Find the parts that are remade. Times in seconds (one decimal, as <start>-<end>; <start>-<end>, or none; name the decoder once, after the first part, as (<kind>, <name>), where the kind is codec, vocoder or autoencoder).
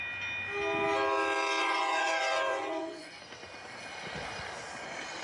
1.6-3.2 (vocoder, Vocos)